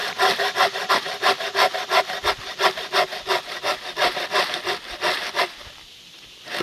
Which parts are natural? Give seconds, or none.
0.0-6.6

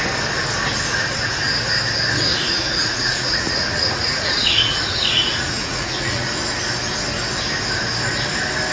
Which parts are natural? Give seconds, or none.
0.0-2.3; 6.3-8.7

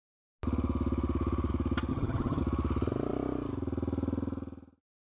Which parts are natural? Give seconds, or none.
0.0-1.9; 2.4-5.0